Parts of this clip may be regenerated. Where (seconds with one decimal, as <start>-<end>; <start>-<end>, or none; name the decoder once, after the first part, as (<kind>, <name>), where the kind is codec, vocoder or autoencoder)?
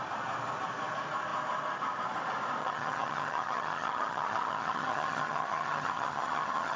2.6-6.8 (vocoder, HiFi-GAN)